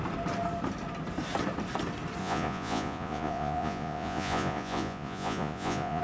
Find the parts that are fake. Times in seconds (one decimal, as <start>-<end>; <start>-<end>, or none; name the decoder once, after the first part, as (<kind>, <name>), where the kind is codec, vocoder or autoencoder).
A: 2.2-6.0 (vocoder, Vocos)